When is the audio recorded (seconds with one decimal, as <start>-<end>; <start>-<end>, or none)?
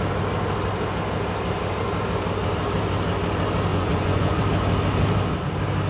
0.0-3.7; 4.4-5.9